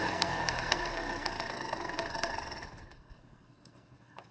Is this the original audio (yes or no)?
no